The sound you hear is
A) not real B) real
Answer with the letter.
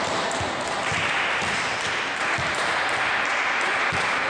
B